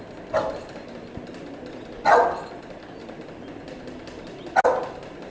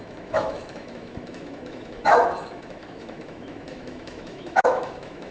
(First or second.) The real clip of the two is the first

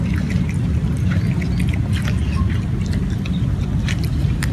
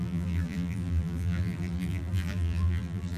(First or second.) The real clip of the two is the first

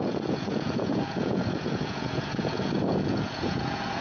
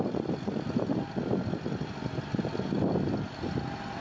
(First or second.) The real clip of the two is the second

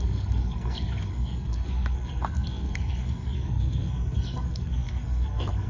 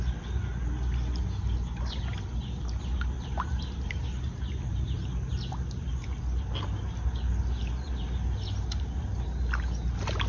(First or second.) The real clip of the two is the second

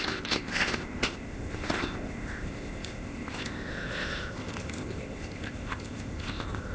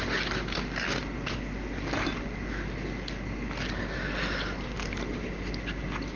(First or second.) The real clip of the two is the second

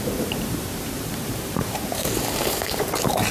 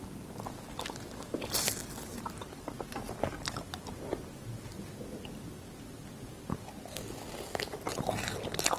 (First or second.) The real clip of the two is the second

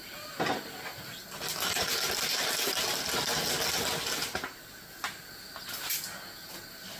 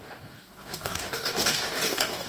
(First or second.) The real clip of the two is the first